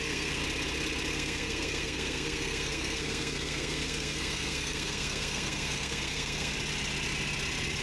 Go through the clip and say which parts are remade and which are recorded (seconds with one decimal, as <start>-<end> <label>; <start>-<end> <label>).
0.0-0.4 remade; 0.4-1.1 recorded; 1.1-6.5 remade; 6.5-7.8 recorded

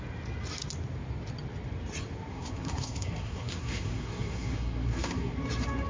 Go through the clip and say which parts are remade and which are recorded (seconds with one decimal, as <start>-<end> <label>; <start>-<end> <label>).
0.0-2.3 recorded; 2.3-5.3 remade; 5.3-5.9 recorded

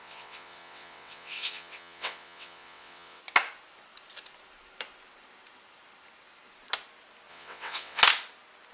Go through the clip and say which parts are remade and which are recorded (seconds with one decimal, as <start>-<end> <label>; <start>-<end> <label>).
0.0-3.2 remade; 3.2-7.3 recorded; 7.3-8.0 remade; 8.0-8.7 recorded

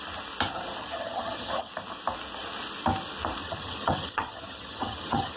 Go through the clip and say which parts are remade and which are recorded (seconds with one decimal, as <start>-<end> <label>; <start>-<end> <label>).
0.0-0.8 recorded; 0.8-1.7 remade; 1.7-3.4 recorded; 3.4-5.4 remade

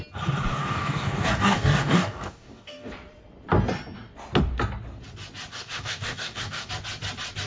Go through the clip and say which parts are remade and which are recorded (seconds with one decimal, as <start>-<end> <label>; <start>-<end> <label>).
0.0-0.5 recorded; 0.5-2.9 remade; 2.9-5.5 recorded; 5.5-6.7 remade; 6.7-7.5 recorded